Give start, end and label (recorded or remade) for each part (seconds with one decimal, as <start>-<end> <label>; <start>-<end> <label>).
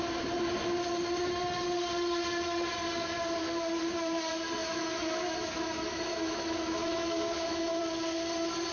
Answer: 0.0-4.6 recorded; 4.6-7.8 remade; 7.8-8.7 recorded